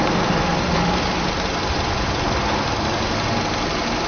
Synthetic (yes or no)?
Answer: no